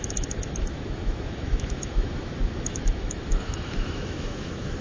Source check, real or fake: fake